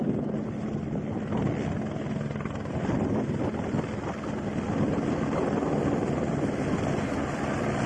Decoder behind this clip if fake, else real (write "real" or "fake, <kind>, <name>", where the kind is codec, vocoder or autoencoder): real